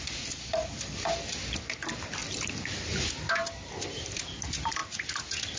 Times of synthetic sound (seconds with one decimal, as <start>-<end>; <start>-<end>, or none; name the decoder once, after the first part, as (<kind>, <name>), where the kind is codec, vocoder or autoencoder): none